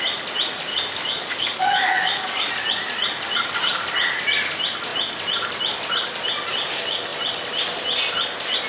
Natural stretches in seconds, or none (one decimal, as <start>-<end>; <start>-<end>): 0.0-0.7; 2.5-8.7

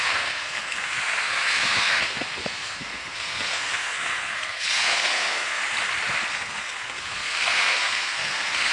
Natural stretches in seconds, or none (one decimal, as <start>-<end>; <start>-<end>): 5.6-6.3

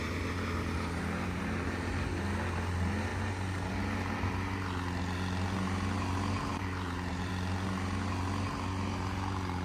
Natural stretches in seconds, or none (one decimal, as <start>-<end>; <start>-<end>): 0.0-6.5; 7.3-9.6

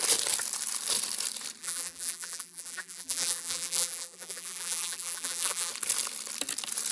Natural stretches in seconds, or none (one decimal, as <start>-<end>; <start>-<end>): 0.0-1.6; 5.7-6.9

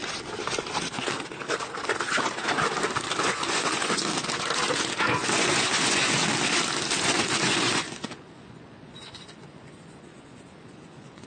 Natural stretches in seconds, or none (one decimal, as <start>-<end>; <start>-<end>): 0.0-3.2; 4.1-5.0; 6.2-7.0